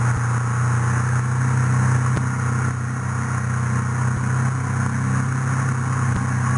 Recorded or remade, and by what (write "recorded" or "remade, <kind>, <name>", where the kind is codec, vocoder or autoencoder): recorded